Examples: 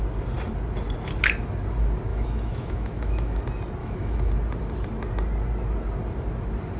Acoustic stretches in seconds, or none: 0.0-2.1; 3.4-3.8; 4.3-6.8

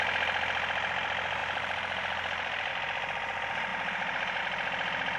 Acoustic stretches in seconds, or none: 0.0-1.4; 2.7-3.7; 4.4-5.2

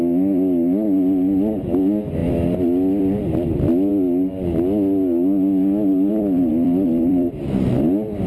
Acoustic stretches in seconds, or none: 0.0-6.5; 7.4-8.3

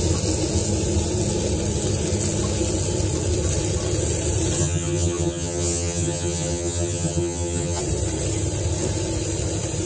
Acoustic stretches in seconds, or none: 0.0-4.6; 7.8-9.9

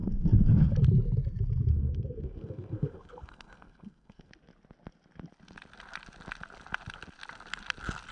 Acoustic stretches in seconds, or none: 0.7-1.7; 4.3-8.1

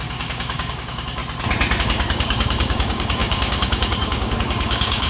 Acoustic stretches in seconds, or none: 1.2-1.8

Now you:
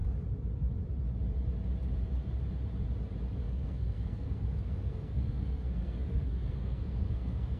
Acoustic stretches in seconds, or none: 0.0-3.4